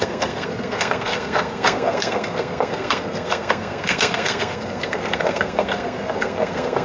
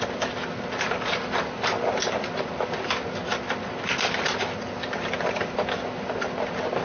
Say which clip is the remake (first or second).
first